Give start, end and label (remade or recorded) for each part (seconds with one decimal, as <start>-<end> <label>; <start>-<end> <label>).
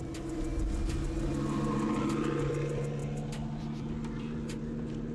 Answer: 0.0-5.1 recorded